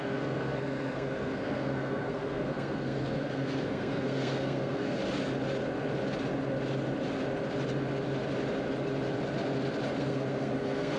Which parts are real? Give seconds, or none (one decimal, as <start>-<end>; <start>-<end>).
5.0-10.0